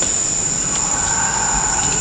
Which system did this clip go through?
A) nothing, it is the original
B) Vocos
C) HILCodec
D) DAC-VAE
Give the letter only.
A